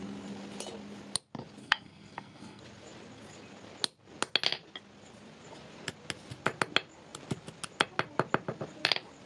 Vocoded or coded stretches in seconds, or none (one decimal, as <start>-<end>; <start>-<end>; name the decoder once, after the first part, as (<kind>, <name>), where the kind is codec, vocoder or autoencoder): 1.6-2.6 (codec, SNAC)

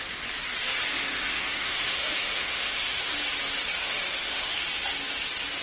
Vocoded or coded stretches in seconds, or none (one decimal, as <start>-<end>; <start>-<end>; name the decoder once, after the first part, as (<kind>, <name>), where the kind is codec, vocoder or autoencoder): 0.9-3.0 (autoencoder, DAC-VAE); 3.8-4.5

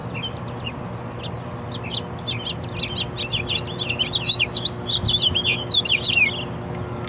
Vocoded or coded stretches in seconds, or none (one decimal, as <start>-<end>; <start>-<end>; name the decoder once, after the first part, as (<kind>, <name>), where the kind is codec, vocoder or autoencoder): none

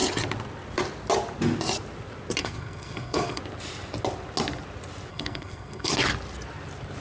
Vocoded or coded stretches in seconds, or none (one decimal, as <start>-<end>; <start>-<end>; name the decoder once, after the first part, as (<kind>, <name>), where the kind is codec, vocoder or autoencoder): 2.4-3.4 (codec, SNAC); 5.1-5.9